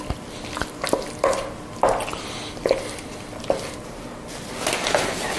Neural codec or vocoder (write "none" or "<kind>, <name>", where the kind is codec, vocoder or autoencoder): none